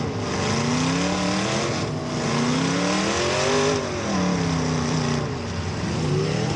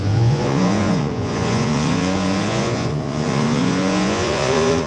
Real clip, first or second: first